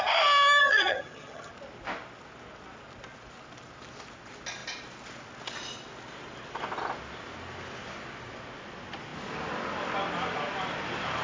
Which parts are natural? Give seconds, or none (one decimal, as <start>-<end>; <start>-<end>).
0.0-0.6; 1.5-11.2